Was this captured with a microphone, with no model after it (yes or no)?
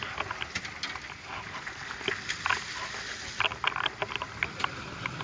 yes